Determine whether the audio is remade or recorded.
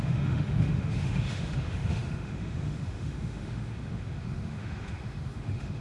remade